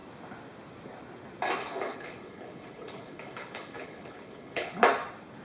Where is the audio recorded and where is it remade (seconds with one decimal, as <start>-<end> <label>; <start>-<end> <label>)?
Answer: 0.0-1.6 recorded; 1.6-4.8 remade; 4.8-5.4 recorded